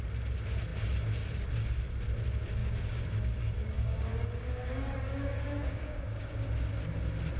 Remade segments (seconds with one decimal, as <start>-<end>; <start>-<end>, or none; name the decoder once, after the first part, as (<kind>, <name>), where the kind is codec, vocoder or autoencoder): 2.6-6.5 (codec, DAC)